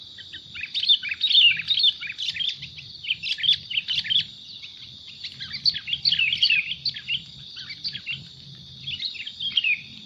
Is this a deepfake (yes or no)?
no